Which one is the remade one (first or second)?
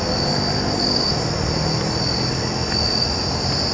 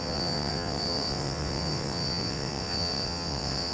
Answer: second